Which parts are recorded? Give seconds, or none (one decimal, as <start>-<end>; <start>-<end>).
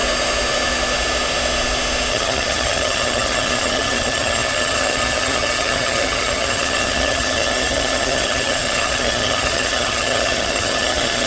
0.0-2.1